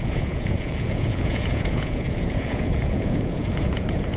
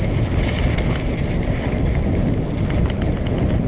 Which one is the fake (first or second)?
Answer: first